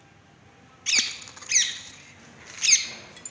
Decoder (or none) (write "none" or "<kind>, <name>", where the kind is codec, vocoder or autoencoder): none